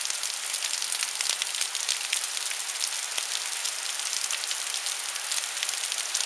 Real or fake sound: real